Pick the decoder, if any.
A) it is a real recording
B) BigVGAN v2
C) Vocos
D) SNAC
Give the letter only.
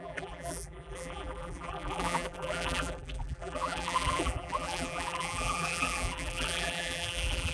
B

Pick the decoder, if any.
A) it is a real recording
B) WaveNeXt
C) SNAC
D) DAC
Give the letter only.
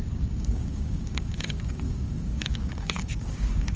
D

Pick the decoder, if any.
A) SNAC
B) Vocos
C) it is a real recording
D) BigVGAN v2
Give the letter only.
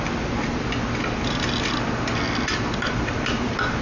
C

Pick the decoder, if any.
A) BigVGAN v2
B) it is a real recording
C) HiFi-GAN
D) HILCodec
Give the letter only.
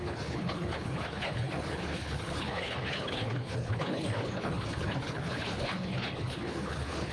D